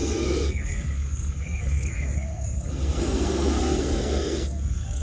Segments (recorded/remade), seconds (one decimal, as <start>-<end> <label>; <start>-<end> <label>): 0.0-5.0 remade